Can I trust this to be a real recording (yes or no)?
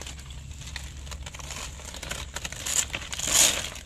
yes